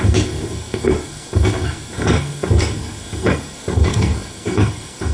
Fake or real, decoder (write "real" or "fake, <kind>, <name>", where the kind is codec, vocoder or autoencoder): fake, codec, SNAC